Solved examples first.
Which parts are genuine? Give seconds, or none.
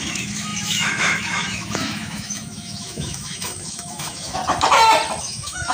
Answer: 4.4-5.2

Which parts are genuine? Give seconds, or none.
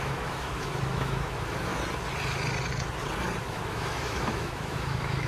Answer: 1.7-3.4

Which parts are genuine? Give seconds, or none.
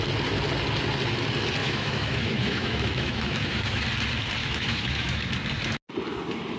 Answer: 0.0-1.6; 3.8-4.4; 5.3-6.6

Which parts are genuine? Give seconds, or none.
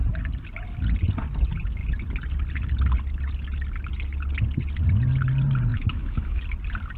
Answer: 0.0-5.7; 6.4-7.0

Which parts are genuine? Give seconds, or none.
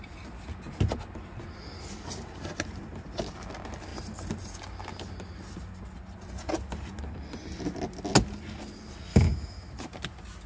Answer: 0.0-9.1; 9.7-10.5